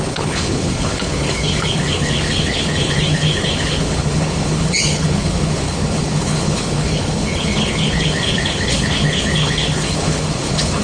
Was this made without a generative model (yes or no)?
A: no